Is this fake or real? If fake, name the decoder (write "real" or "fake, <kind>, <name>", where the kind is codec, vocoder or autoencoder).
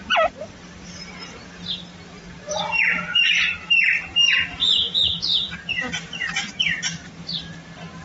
fake, vocoder, BigVGAN v2